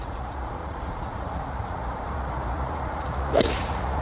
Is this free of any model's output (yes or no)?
no